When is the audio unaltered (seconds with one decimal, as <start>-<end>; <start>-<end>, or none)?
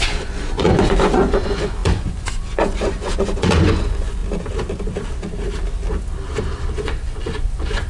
4.2-6.7